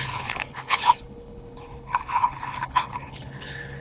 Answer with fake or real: fake